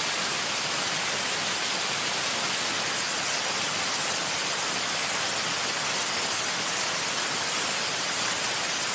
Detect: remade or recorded recorded